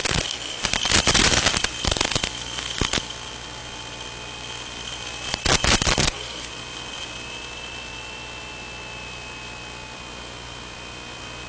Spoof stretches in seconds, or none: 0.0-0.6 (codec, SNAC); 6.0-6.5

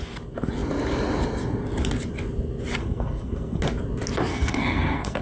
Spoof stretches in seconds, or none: 2.8-3.6 (codec, SNAC); 4.3-5.2

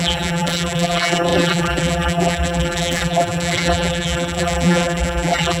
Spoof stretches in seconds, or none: 0.0-5.6 (vocoder, BigVGAN v2)

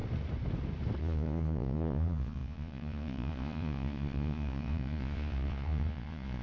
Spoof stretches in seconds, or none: 1.0-6.4 (vocoder, Vocos)

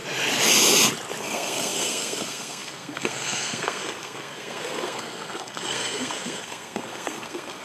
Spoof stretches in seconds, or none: 1.2-7.6 (codec, SNAC)

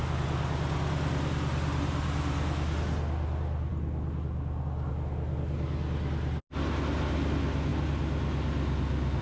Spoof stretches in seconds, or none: none